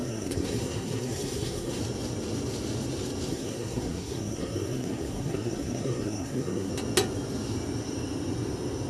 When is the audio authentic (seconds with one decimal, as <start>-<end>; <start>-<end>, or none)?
1.8-3.3; 6.7-8.9